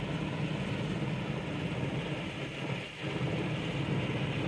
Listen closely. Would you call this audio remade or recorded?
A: recorded